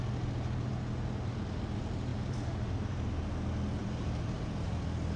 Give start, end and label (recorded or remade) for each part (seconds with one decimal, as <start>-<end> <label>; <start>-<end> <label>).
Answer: 0.0-2.1 recorded; 2.1-3.2 remade; 3.2-3.8 recorded; 3.8-4.7 remade; 4.7-5.2 recorded